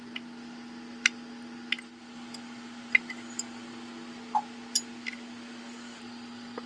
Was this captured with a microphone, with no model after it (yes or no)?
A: yes